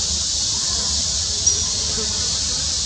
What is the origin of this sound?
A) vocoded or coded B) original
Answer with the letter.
B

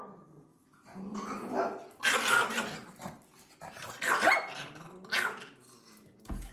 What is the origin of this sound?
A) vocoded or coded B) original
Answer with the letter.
B